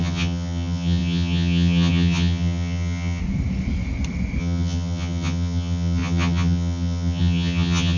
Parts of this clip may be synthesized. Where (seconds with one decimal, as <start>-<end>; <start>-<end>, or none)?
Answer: 0.0-3.2; 4.4-8.0